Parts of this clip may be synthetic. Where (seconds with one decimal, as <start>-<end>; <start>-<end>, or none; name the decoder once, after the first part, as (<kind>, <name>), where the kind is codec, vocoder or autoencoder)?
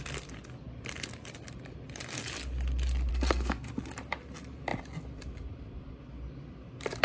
3.1-3.7 (codec, SNAC)